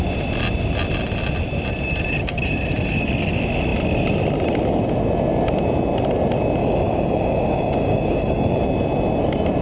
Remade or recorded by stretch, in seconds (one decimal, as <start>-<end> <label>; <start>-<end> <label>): 0.0-6.6 recorded; 6.6-8.6 remade; 8.6-9.6 recorded